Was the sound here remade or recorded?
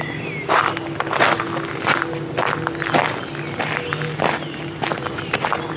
recorded